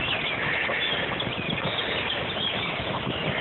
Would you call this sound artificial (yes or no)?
no